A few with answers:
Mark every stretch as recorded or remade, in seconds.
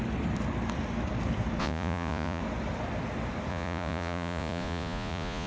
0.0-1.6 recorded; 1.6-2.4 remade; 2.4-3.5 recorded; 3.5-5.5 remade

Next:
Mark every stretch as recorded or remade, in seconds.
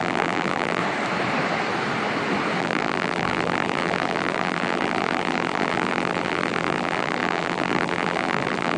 0.0-0.8 remade; 0.8-2.6 recorded; 2.6-8.8 remade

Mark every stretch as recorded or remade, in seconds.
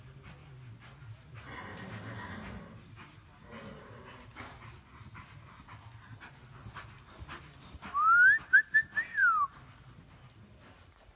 0.0-11.2 recorded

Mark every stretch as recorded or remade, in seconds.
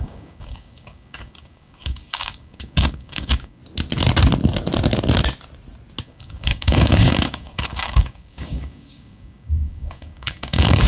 0.0-3.6 remade; 3.6-6.0 recorded; 6.0-10.9 remade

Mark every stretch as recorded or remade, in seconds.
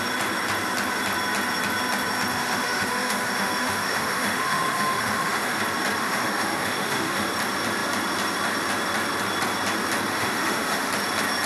0.0-2.3 recorded; 2.3-5.6 remade; 5.6-6.0 recorded; 6.0-7.3 remade; 7.3-10.1 recorded; 10.1-10.9 remade; 10.9-11.5 recorded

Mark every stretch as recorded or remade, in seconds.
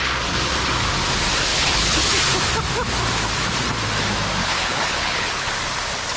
0.0-1.5 recorded; 1.5-2.1 remade; 2.1-4.4 recorded; 4.4-5.5 remade; 5.5-6.2 recorded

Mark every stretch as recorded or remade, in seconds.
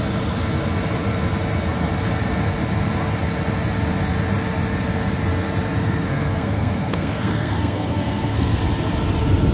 0.0-5.8 recorded; 5.8-8.6 remade; 8.6-9.5 recorded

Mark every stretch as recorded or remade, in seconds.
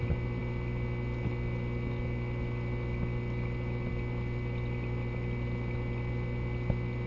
0.0-7.1 recorded